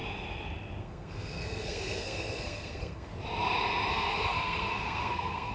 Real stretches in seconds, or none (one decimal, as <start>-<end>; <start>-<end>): 0.0-0.8; 3.1-3.9